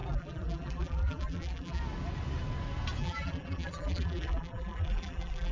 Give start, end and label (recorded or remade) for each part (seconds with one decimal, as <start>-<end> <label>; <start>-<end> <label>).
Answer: 0.0-1.8 remade; 1.8-3.0 recorded; 3.0-5.5 remade